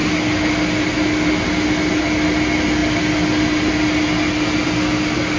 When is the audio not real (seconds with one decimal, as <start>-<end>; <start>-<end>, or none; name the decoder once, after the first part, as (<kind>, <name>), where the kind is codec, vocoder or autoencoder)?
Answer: none